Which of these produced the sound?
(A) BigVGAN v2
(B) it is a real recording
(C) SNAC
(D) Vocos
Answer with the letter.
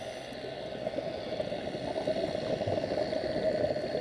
B